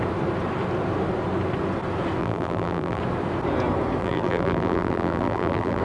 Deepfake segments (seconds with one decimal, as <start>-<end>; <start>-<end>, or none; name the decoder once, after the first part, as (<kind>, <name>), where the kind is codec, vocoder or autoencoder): 2.2-3.0 (vocoder, BigVGAN v2); 4.0-5.8